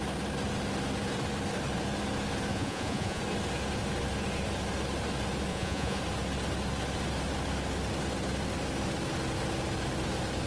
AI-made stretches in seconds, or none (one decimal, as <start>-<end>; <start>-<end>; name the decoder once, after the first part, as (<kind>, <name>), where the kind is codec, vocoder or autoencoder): 2.5-3.2 (vocoder, Vocos); 5.5-6.0